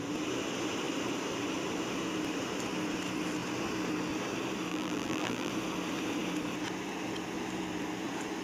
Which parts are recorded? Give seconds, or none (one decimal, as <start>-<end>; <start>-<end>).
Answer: 0.0-4.7; 5.5-8.4